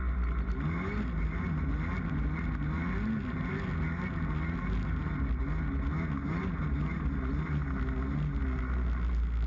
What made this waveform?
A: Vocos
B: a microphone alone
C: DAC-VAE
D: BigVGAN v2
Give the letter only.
B